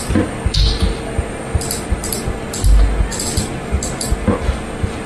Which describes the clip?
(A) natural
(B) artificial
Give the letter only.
A